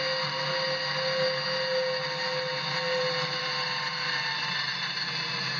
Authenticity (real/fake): real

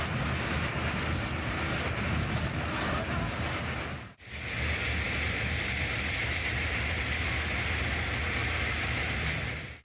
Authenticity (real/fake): real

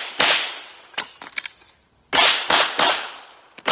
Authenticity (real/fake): real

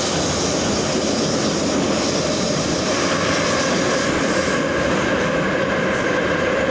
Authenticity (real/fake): real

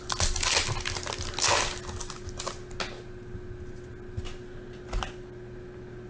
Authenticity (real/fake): real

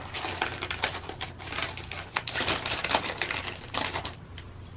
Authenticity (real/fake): real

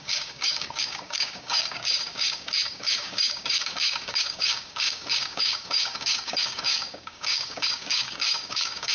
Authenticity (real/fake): fake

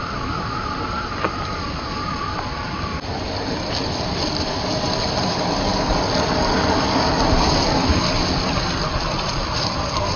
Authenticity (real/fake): real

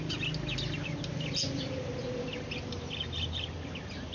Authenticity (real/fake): real